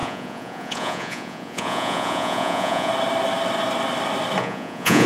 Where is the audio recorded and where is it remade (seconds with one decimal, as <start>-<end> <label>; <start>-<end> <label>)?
0.0-2.9 remade; 2.9-4.4 recorded; 4.4-5.1 remade